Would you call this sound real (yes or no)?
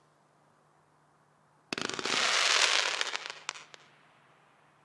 yes